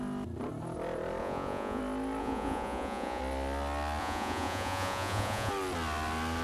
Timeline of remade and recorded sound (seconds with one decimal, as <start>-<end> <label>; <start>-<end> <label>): 0.0-1.2 recorded; 1.2-1.8 remade; 1.8-2.2 recorded; 2.2-3.2 remade; 3.2-4.0 recorded; 4.0-5.5 remade; 5.5-6.4 recorded